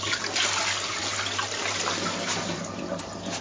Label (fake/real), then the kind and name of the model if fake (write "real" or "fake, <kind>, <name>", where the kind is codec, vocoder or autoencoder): real